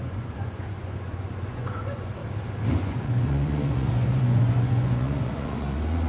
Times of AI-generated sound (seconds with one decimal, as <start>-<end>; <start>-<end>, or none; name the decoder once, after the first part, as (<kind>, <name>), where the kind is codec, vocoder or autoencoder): 0.0-2.2 (vocoder, Vocos); 2.8-6.1